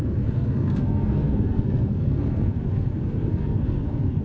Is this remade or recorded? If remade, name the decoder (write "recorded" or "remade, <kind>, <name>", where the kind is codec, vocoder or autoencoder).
remade, codec, SNAC